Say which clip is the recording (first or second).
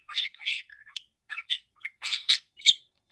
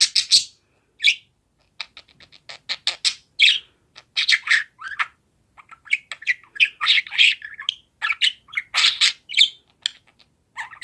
second